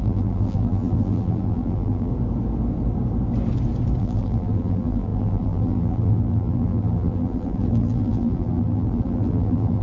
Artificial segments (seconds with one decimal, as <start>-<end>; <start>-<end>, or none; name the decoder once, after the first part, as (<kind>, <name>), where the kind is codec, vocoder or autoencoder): 0.0-2.1 (vocoder, BigVGAN v2); 4.0-9.8